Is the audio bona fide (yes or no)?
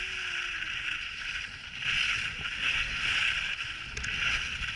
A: yes